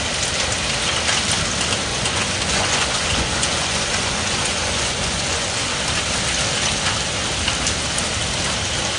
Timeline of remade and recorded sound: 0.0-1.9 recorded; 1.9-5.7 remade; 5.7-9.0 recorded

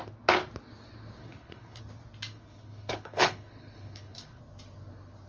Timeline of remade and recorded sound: 0.0-1.2 recorded; 1.2-1.8 remade; 1.8-2.3 recorded; 2.3-4.4 remade; 4.4-5.3 recorded

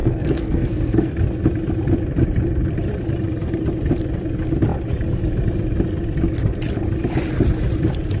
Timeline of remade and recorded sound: 0.0-1.1 remade; 1.1-8.2 recorded